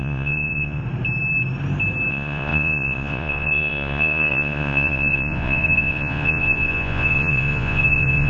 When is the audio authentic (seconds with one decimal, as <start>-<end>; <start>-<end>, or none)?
0.8-2.1